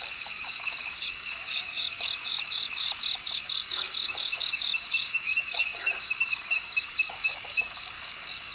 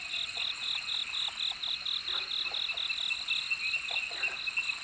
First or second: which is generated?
first